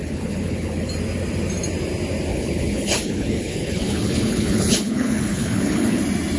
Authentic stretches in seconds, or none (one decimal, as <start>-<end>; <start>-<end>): 0.9-2.3; 6.0-6.4